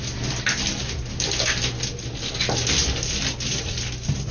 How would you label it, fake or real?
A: real